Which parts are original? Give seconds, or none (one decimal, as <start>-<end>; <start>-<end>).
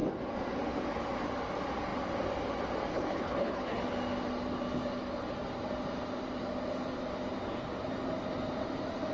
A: 0.0-2.9; 3.8-9.1